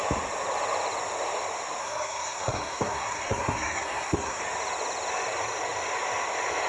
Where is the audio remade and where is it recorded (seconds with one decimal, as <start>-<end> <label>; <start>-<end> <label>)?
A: 0.0-1.8 recorded; 1.8-4.4 remade; 4.4-6.7 recorded